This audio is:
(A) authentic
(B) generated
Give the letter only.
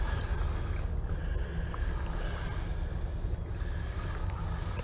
A